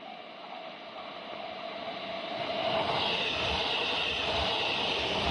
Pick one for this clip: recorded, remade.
recorded